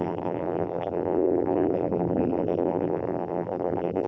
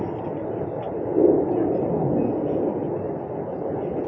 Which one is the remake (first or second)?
first